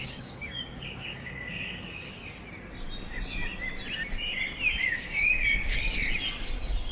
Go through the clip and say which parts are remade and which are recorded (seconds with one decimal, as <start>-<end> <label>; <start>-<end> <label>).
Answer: 0.0-2.2 remade; 2.2-4.7 recorded; 4.7-5.8 remade; 5.8-6.9 recorded